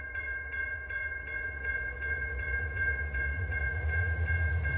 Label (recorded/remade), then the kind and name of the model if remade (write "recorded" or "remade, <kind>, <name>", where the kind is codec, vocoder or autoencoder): remade, vocoder, Vocos